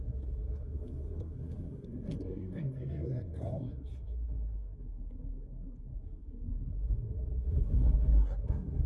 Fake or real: fake